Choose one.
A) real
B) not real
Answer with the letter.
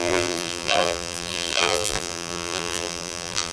B